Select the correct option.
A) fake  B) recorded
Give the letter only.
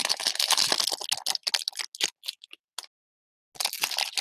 B